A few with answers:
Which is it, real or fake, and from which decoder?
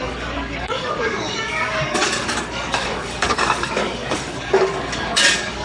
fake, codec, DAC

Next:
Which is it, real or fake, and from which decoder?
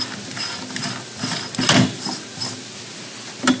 real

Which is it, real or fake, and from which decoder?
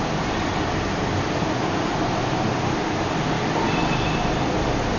real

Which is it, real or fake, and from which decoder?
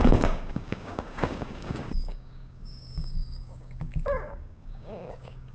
fake, codec, DAC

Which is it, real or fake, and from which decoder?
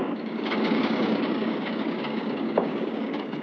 fake, codec, DAC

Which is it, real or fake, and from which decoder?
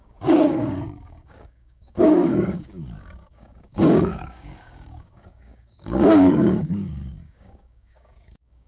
fake, codec, DAC